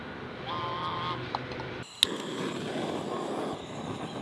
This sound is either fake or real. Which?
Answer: real